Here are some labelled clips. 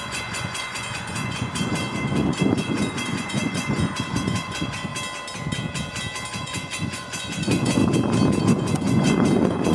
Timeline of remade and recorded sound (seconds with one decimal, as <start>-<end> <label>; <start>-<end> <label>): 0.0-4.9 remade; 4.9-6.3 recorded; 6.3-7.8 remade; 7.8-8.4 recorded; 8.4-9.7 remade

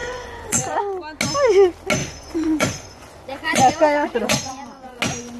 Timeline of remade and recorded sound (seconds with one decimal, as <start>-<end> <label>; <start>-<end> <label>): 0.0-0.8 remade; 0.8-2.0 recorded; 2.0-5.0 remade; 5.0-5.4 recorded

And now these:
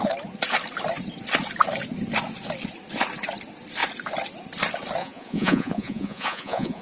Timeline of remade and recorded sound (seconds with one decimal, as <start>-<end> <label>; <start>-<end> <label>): 0.0-5.0 recorded; 5.0-6.8 remade

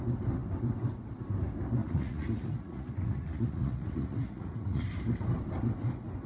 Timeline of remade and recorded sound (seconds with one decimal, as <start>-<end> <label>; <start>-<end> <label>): 0.0-1.8 recorded; 1.8-4.8 remade; 4.8-6.3 recorded